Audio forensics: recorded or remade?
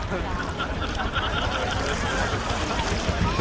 recorded